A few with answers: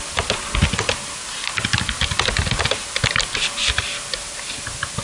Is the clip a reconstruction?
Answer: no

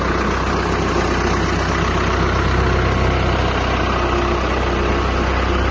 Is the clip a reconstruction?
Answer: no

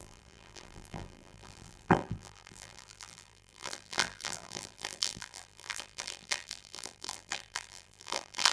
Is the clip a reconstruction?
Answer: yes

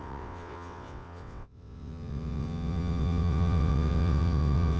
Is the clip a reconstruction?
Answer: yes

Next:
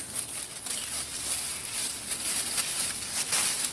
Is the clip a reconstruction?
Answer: no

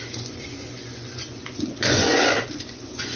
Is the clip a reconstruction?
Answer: yes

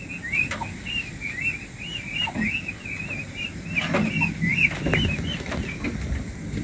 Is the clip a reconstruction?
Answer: no